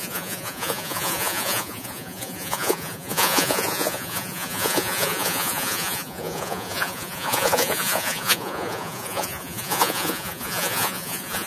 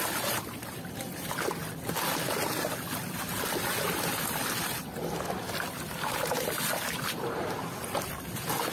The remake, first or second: first